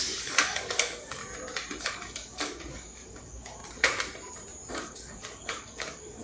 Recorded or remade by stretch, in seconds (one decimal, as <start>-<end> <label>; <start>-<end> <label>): 0.0-1.2 remade; 1.2-1.8 recorded; 1.8-3.6 remade; 3.6-4.7 recorded; 4.7-6.2 remade